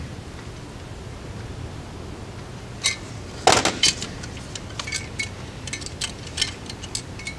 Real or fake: real